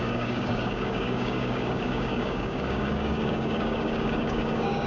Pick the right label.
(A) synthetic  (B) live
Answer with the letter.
A